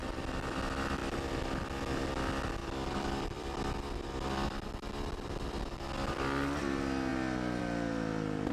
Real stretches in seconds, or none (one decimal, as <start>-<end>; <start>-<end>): 0.6-2.6; 5.6-8.5